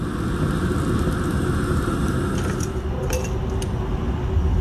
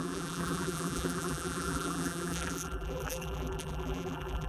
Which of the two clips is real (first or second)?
first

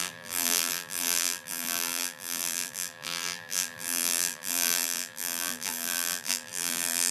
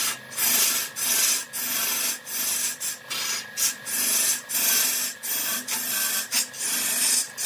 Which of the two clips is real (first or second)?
second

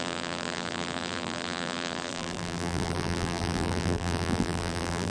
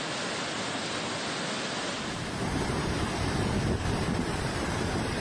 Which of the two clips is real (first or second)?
second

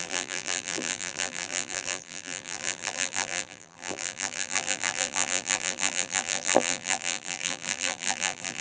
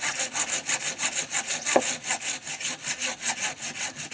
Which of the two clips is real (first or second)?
second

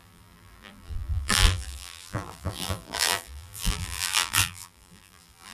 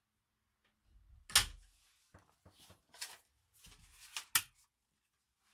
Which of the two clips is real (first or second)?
second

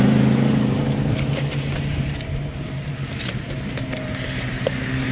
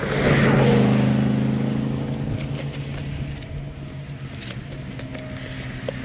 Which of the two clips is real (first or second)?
second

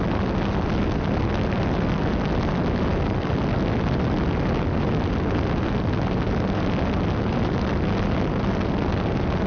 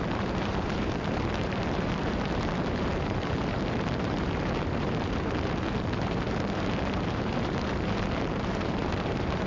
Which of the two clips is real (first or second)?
first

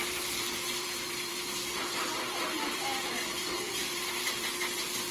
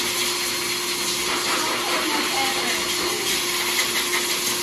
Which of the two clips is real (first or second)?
second